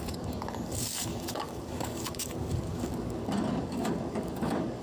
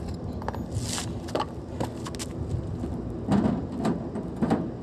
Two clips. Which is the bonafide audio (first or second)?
second